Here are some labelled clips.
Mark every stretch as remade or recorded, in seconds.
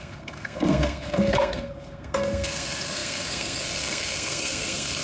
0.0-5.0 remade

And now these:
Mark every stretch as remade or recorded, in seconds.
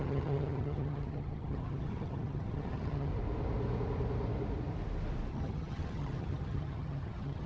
0.0-3.1 remade; 3.1-5.3 recorded; 5.3-7.5 remade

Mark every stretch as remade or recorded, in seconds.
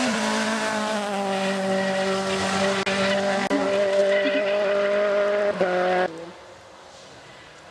0.0-7.7 recorded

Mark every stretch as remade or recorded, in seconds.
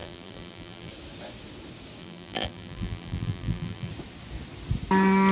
0.0-0.9 remade; 0.9-2.0 recorded; 2.0-3.9 remade; 3.9-5.3 recorded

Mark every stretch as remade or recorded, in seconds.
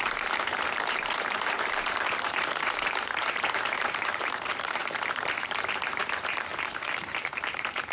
0.0-7.9 remade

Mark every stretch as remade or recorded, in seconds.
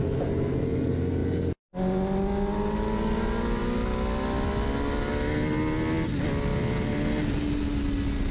0.0-8.3 recorded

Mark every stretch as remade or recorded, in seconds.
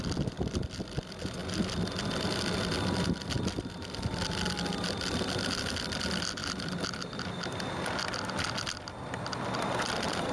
0.0-10.3 recorded